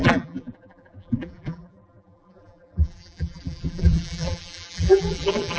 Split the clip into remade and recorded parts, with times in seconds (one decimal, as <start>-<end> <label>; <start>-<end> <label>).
0.0-5.6 remade

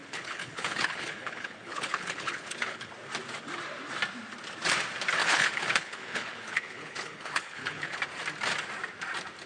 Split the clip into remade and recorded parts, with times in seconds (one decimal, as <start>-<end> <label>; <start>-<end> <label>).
0.0-2.9 remade; 2.9-5.2 recorded; 5.2-8.0 remade; 8.0-9.5 recorded